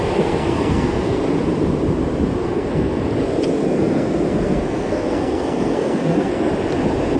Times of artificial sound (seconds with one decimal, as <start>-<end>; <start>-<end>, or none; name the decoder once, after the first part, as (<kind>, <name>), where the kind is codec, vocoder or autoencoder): 0.0-1.2 (codec, SNAC); 2.4-3.0; 3.6-6.5